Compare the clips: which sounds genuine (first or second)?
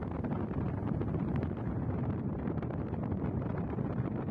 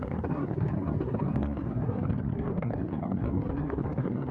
first